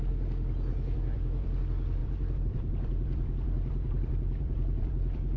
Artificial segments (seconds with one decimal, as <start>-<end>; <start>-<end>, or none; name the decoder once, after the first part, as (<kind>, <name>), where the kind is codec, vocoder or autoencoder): 0.7-1.6 (vocoder, BigVGAN v2); 2.0-5.4